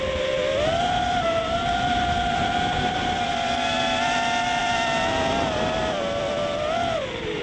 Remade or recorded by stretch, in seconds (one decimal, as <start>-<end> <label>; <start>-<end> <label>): 0.0-7.4 recorded